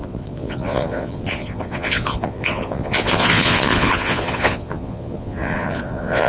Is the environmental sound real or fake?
fake